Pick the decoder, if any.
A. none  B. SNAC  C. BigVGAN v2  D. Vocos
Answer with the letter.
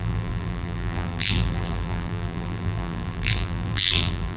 C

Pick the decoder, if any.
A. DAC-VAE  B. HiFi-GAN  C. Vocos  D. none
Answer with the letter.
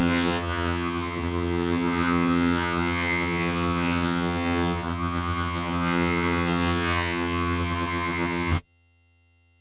B